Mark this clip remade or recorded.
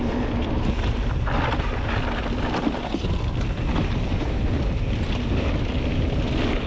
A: recorded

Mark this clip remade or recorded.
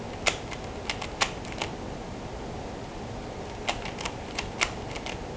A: recorded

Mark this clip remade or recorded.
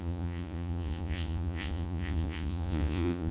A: remade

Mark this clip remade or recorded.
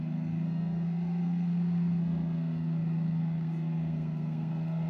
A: remade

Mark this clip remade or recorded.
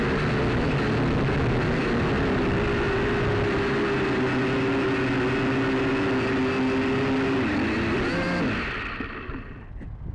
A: recorded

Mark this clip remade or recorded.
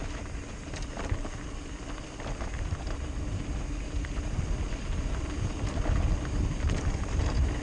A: recorded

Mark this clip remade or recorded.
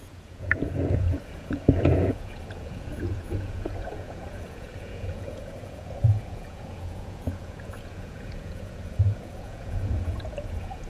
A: remade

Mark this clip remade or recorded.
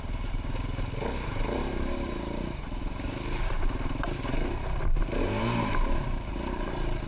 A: remade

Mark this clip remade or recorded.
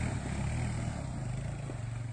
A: recorded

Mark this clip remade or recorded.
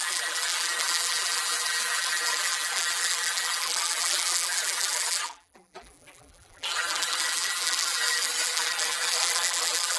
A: remade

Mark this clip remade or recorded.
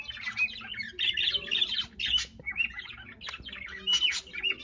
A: recorded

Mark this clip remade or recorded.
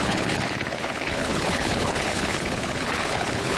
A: remade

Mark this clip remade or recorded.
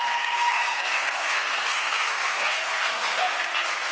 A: remade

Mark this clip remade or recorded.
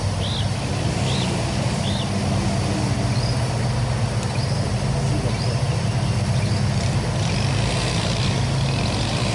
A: recorded